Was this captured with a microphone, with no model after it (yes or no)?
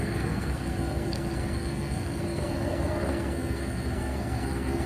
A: no